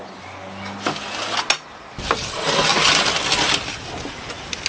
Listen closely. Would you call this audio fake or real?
real